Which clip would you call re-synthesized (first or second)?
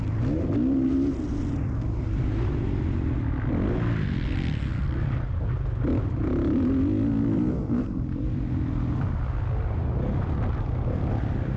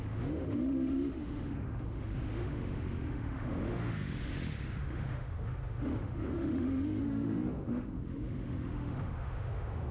second